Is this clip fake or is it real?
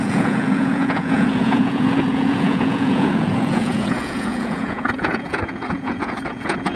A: fake